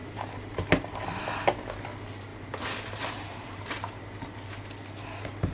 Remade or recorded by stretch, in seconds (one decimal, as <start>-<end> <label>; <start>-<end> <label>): 0.0-0.7 remade; 0.7-2.3 recorded; 2.3-4.0 remade; 4.0-5.5 recorded